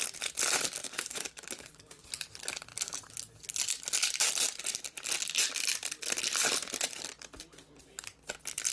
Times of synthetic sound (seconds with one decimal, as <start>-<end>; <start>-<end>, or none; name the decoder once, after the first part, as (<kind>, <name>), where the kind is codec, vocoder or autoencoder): 0.8-2.1 (codec, DAC)